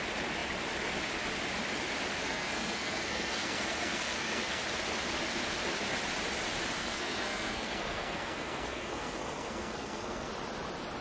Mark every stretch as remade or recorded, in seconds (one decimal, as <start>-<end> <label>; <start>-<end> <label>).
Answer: 0.0-2.2 recorded; 2.2-4.6 remade; 4.6-6.8 recorded; 6.8-10.3 remade; 10.3-11.0 recorded